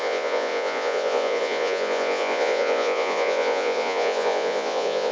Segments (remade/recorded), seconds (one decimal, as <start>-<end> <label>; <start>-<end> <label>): 0.0-5.1 remade